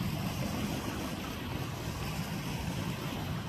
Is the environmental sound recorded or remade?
recorded